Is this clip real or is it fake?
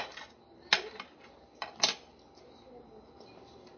real